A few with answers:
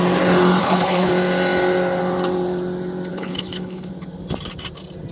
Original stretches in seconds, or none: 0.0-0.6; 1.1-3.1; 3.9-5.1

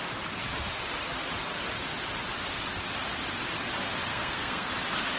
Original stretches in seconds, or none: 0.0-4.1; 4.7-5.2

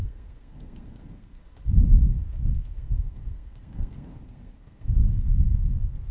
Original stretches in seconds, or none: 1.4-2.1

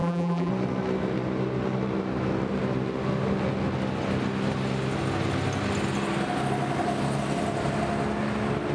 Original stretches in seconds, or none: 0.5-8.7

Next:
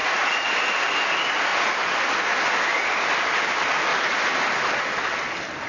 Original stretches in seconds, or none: 0.5-5.7

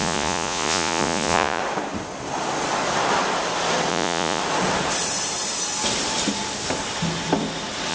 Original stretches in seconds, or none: 1.6-3.9; 4.4-7.9

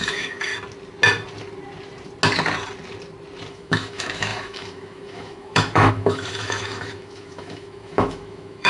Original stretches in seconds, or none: 0.5-3.5